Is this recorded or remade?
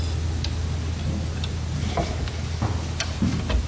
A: recorded